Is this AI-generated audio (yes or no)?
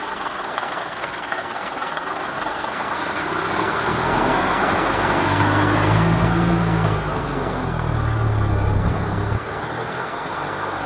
yes